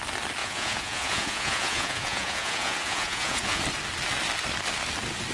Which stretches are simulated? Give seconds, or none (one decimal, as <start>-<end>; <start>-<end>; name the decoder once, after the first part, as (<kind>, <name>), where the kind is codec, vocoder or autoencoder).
0.4-3.6 (vocoder, Vocos)